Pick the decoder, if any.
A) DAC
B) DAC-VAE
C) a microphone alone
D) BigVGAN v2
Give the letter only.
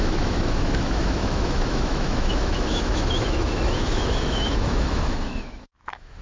B